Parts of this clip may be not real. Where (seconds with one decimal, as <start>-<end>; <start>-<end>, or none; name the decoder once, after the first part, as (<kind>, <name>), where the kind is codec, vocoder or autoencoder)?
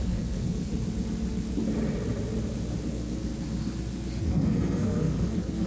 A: 0.0-0.7 (codec, SNAC); 2.9-3.3; 4.2-5.7